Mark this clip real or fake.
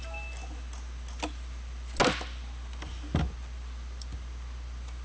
real